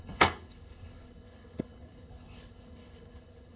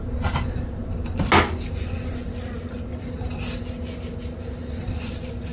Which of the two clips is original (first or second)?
second